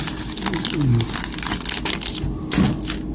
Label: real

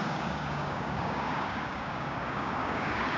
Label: fake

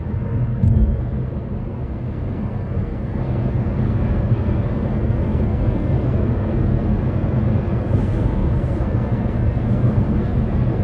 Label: fake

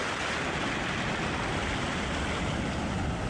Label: real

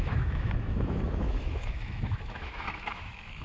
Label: fake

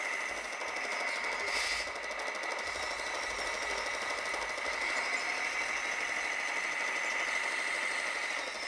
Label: real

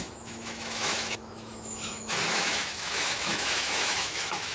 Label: fake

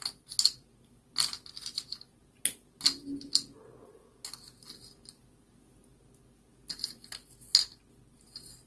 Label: real